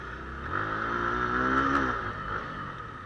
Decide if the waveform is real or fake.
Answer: real